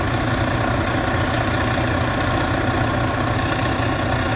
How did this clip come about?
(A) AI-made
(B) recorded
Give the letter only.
B